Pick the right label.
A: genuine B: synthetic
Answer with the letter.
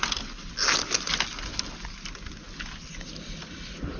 A